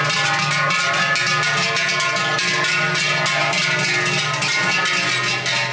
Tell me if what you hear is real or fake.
real